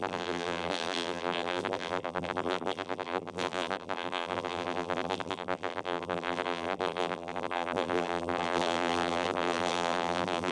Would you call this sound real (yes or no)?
no